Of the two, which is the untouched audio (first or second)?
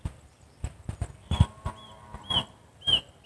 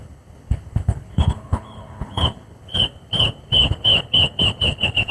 first